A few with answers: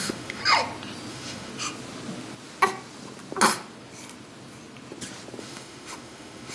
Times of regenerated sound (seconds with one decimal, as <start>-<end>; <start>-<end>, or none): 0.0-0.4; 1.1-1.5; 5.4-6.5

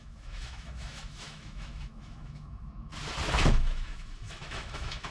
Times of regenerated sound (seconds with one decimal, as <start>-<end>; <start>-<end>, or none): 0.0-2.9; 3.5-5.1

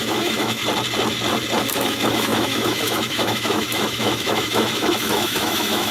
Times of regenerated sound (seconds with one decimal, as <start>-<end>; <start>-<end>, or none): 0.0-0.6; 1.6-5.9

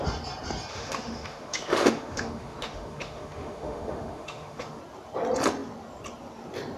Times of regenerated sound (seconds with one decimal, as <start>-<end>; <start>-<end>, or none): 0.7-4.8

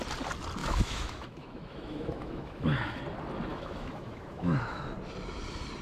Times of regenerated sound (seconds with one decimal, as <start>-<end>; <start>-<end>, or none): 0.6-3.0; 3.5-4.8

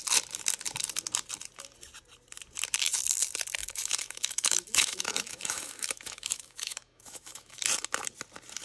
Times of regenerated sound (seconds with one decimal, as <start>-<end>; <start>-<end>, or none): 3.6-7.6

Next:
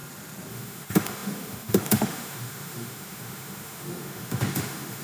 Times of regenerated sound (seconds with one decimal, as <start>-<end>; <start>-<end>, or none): 0.5-5.0